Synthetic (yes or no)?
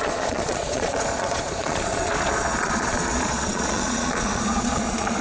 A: yes